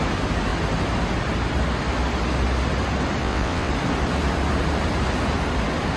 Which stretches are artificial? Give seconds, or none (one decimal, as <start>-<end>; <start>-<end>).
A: 3.2-3.7